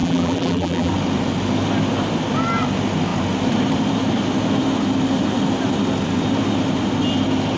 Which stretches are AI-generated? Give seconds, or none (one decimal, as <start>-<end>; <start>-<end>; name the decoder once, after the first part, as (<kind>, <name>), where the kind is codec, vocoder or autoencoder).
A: 0.0-0.9 (vocoder, BigVGAN v2)